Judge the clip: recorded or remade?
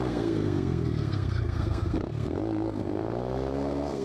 remade